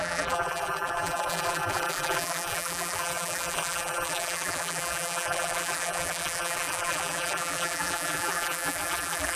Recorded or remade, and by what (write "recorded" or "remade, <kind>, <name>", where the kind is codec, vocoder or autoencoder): remade, vocoder, BigVGAN v2